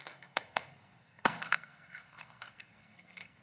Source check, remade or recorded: remade